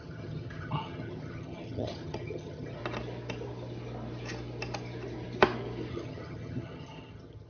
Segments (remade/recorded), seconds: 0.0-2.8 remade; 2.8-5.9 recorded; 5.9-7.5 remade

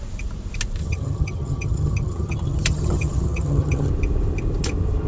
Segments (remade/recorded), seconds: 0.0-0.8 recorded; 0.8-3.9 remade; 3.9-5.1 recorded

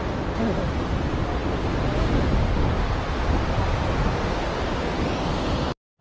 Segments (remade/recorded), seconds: 0.0-6.0 recorded

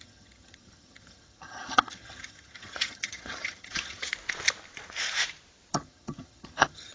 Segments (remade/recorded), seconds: 0.0-4.1 remade; 4.1-5.7 recorded; 5.7-6.9 remade